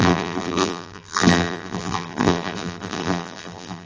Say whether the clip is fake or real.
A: fake